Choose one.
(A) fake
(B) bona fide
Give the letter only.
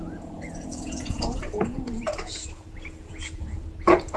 A